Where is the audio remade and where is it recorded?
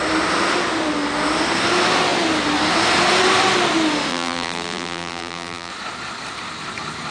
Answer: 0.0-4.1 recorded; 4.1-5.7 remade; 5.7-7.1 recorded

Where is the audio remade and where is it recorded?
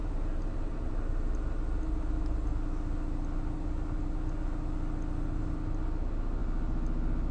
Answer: 0.0-0.9 remade; 0.9-7.3 recorded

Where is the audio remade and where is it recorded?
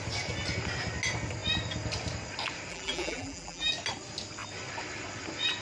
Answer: 0.0-2.7 recorded; 2.7-3.7 remade; 3.7-5.6 recorded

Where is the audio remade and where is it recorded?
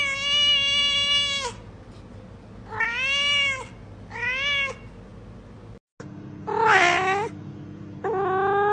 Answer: 0.0-8.7 recorded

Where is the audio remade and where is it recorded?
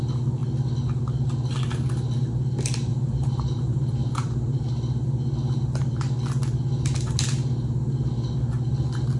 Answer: 0.0-2.9 recorded; 2.9-4.6 remade; 4.6-9.2 recorded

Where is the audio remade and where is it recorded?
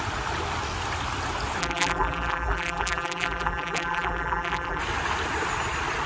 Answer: 0.0-1.6 recorded; 1.6-4.8 remade; 4.8-6.1 recorded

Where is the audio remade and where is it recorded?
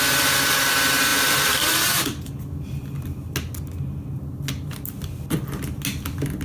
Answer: 0.0-1.1 recorded; 1.1-1.6 remade; 1.6-6.4 recorded